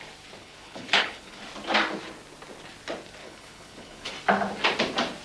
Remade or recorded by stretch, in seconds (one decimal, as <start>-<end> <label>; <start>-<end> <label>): 0.0-0.4 recorded; 0.4-1.4 remade; 1.4-3.2 recorded; 3.2-4.1 remade; 4.1-5.2 recorded